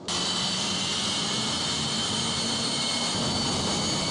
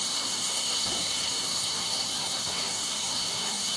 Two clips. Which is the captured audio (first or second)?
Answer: first